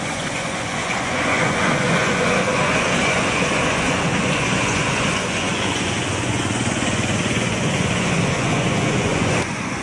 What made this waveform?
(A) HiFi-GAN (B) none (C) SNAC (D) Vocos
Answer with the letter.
D